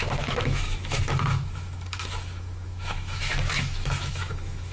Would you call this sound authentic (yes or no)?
no